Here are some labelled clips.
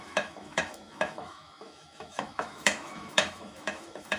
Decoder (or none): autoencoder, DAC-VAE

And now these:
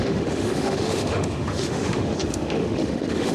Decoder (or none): autoencoder, DAC-VAE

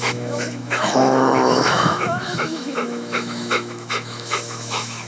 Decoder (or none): autoencoder, DAC-VAE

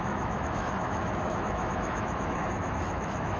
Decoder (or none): autoencoder, DAC-VAE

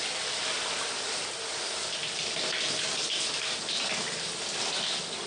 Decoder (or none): none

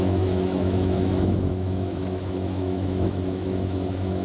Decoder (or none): autoencoder, DAC-VAE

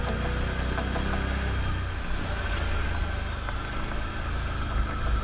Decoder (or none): none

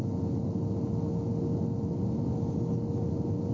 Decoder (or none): none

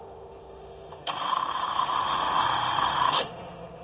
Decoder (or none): autoencoder, DAC-VAE